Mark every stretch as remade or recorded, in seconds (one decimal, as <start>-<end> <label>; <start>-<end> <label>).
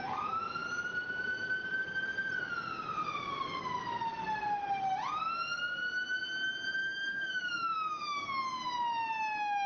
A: 0.0-6.8 recorded; 6.8-8.3 remade; 8.3-9.7 recorded